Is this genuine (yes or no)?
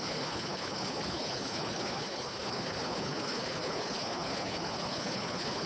no